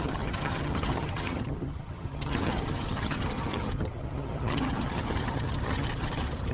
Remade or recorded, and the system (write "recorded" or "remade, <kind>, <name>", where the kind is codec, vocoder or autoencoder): remade, vocoder, HiFi-GAN